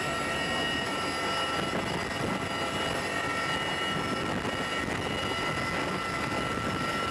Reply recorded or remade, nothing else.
recorded